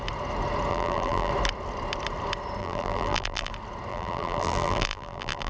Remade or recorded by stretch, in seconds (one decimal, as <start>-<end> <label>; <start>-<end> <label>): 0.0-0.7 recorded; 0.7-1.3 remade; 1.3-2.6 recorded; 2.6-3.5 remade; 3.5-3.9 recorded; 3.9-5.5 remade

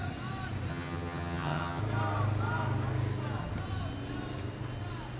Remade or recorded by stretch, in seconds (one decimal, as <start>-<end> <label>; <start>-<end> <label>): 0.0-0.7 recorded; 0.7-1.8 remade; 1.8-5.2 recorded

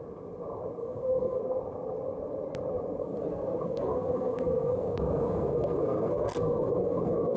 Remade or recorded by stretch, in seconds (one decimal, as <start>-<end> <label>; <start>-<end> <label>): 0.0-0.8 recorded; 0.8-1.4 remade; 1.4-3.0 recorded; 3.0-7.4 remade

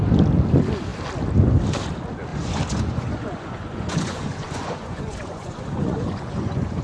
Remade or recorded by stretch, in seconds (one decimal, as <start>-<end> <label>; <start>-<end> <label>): 0.0-2.3 recorded; 2.3-6.8 remade

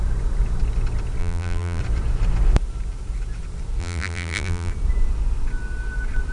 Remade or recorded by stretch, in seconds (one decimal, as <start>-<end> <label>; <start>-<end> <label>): 0.0-1.2 recorded; 1.2-1.8 remade; 1.8-3.8 recorded; 3.8-4.7 remade; 4.7-6.3 recorded